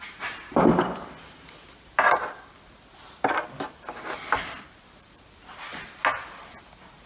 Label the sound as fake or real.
real